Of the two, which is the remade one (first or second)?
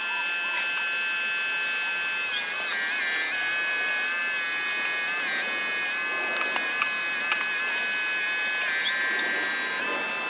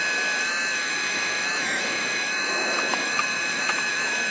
second